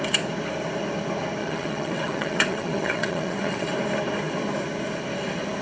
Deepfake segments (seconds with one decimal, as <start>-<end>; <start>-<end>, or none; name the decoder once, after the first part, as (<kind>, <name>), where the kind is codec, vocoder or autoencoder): 1.4-3.7 (vocoder, WaveNeXt)